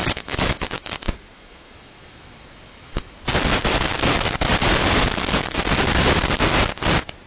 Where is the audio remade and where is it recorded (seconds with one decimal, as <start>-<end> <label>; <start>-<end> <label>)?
0.0-3.2 remade; 3.2-7.3 recorded